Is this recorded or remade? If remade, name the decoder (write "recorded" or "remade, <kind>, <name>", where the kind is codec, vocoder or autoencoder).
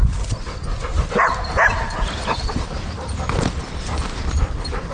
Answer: recorded